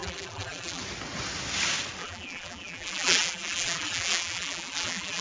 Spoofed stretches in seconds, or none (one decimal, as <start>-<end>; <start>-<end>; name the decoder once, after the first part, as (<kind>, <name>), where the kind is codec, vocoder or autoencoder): 0.0-0.8 (vocoder, BigVGAN v2); 2.0-5.2